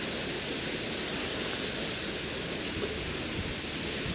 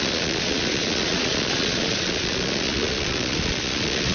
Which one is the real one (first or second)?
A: first